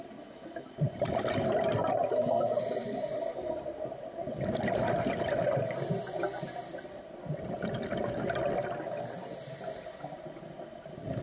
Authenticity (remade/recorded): recorded